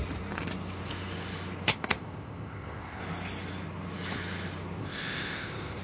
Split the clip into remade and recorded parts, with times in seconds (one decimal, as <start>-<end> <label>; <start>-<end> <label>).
0.0-1.7 recorded; 1.7-3.0 remade; 3.0-4.8 recorded; 4.8-5.8 remade